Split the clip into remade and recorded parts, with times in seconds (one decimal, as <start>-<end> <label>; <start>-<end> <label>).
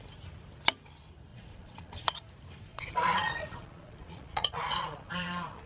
0.0-1.3 recorded; 1.3-2.1 remade; 2.1-2.7 recorded; 2.7-5.7 remade